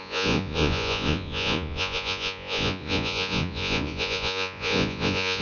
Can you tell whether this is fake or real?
fake